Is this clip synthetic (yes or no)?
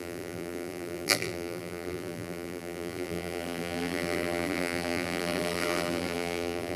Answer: yes